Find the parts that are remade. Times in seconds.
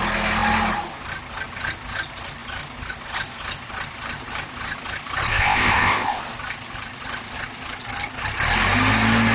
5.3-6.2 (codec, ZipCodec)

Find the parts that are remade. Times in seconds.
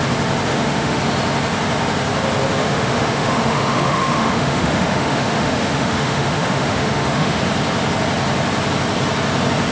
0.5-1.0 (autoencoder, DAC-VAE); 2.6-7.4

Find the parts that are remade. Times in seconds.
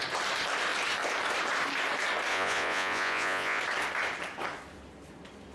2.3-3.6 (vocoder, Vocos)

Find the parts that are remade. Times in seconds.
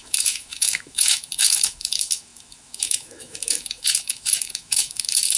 0.0-5.4 (autoencoder, DAC-VAE)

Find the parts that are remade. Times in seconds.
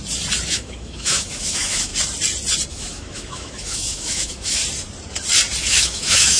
0.5-1.9 (autoencoder, DAC-VAE); 2.7-4.6; 5.6-6.4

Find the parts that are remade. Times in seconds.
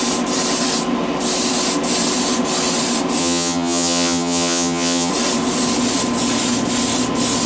3.2-5.1 (vocoder, HiFi-GAN)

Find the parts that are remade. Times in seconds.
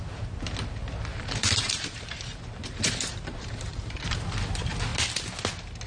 1.1-4.0 (vocoder, BigVGAN v2)